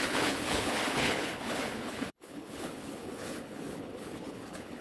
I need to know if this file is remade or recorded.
remade